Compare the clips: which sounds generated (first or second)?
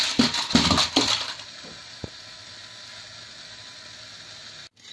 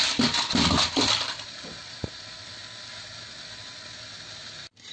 second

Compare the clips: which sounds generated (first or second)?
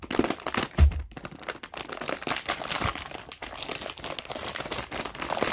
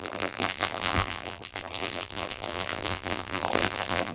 second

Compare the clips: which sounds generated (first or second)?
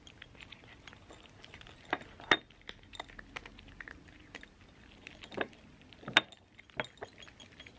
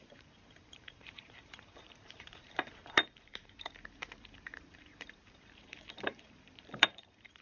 second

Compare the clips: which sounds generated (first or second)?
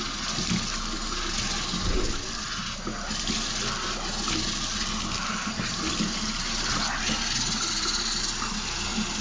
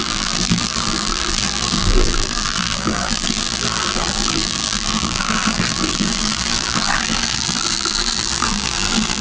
second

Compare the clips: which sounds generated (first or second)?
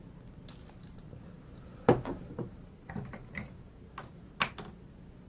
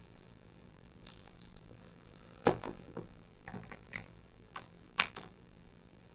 second